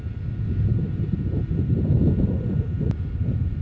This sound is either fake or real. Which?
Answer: real